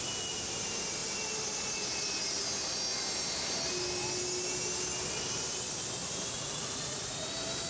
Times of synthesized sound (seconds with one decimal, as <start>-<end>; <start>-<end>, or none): 6.0-7.3